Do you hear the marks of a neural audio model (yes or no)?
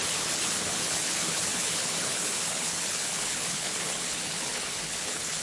yes